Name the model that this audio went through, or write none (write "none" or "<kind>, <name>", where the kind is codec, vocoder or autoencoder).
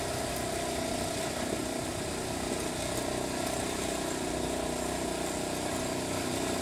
none